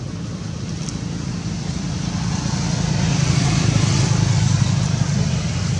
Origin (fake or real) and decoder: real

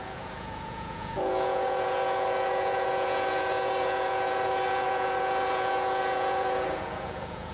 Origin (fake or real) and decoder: fake, vocoder, Vocos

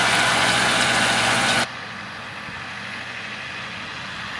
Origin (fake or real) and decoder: fake, vocoder, Vocos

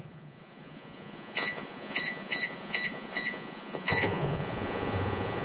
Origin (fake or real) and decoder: fake, vocoder, Vocos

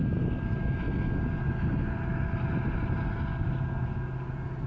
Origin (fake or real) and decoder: real